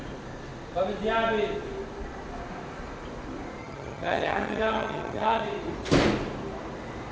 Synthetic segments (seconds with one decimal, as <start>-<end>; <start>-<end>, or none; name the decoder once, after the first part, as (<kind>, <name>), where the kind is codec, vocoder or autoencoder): 3.6-5.4 (vocoder, HiFi-GAN)